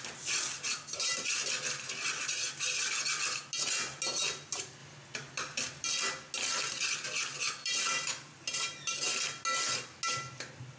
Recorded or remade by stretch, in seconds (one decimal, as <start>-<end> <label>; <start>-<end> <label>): 0.0-10.8 recorded